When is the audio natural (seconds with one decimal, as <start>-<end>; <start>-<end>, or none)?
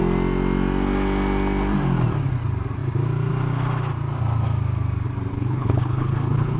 0.0-5.3